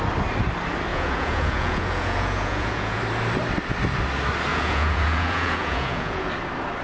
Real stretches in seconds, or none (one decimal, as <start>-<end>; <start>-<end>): 0.0-0.9; 3.0-4.5; 6.3-6.8

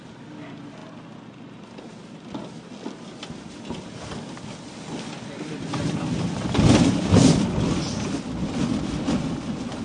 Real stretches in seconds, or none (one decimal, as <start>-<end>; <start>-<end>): 0.0-9.8

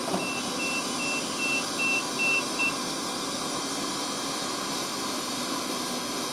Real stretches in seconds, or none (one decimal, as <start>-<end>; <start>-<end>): 0.0-6.3